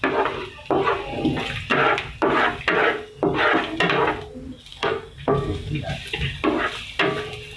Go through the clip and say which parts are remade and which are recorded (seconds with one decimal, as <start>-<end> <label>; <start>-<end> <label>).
0.0-4.7 recorded; 4.7-5.8 remade; 5.8-7.6 recorded